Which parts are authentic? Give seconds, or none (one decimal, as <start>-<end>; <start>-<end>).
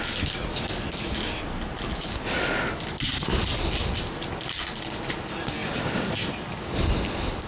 0.0-7.5